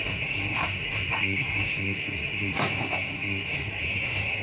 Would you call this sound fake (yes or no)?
yes